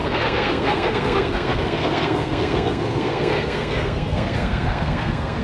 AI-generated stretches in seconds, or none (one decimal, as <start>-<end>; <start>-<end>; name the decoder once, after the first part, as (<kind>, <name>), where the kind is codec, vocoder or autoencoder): 0.0-5.4 (codec, SNAC)